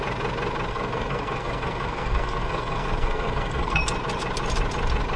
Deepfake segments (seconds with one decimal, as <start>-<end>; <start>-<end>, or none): 0.7-3.8